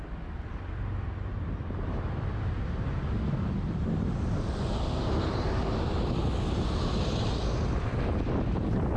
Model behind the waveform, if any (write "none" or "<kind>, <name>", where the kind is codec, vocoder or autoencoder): none